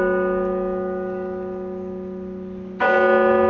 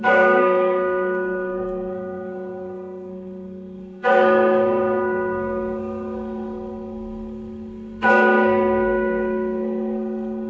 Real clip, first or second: first